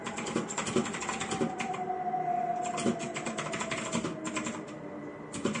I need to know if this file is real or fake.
real